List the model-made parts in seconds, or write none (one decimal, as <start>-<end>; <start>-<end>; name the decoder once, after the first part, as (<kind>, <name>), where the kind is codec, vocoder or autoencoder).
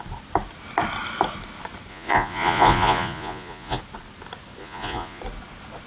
1.9-3.8 (vocoder, Vocos); 4.6-5.2